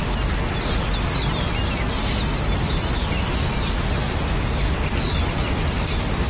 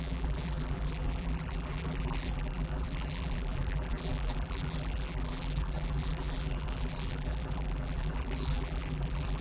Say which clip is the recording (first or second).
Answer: first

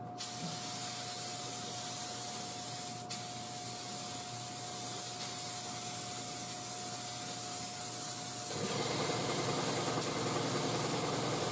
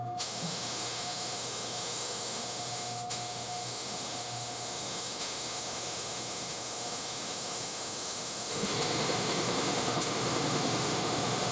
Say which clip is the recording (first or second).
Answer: first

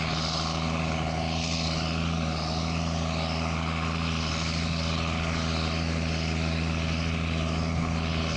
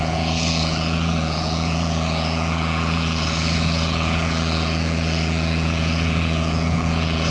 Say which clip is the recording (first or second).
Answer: first